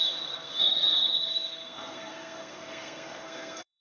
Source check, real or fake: fake